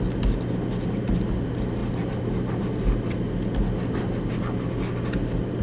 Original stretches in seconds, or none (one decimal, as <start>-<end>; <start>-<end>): 0.0-5.6